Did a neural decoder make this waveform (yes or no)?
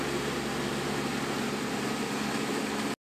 no